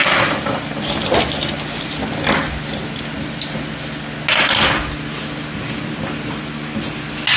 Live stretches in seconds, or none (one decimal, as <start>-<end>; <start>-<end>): 0.9-7.4